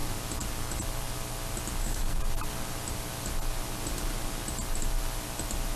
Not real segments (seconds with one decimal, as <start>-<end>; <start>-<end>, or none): 1.8-2.2